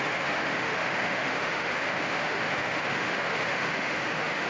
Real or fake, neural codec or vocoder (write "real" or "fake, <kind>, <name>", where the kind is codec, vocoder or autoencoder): fake, autoencoder, DAC-VAE